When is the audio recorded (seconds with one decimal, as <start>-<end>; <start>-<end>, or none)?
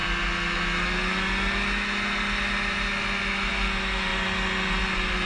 0.0-5.3